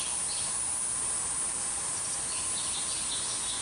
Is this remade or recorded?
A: recorded